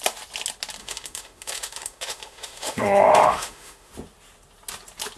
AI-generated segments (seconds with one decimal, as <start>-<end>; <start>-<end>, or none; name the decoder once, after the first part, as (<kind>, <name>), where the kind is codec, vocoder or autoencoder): 0.8-3.9 (autoencoder, DAC-VAE)